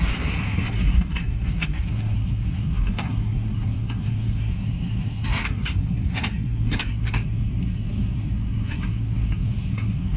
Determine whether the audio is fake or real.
fake